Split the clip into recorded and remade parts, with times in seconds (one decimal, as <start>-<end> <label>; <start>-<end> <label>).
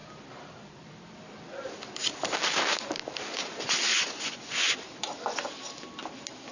0.0-3.9 recorded; 3.9-4.7 remade; 4.7-6.5 recorded